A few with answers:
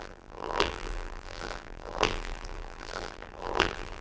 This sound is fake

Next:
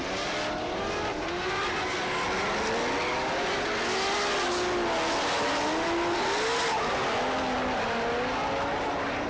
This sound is real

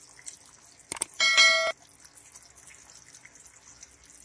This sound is real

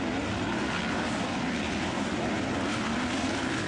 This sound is real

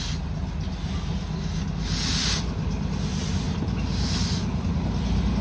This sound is real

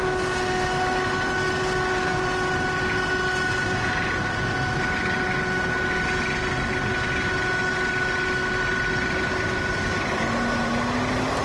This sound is real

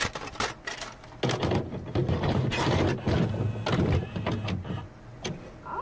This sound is real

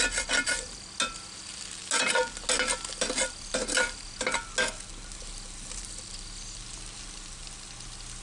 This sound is real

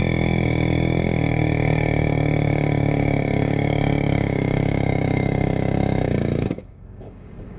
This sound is fake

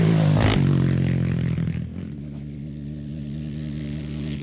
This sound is real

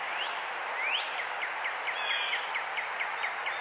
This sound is real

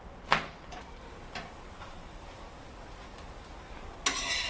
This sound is real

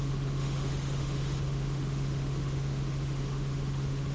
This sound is fake